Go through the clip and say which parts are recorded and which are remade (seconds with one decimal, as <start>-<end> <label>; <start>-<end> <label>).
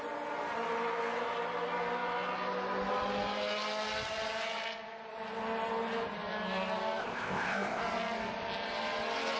0.0-7.0 recorded; 7.0-7.8 remade; 7.8-9.4 recorded